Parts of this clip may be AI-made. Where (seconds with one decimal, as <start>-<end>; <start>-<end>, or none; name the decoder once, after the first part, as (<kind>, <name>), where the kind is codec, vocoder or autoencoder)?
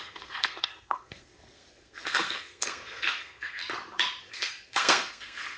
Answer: 0.0-3.6 (codec, SNAC); 4.3-5.6